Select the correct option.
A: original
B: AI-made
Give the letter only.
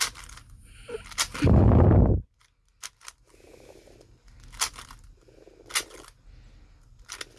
A